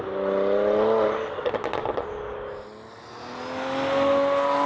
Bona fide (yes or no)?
yes